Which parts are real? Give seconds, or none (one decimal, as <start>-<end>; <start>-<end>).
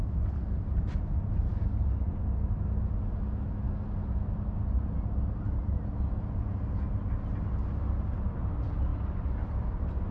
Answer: 0.0-1.5; 2.1-10.1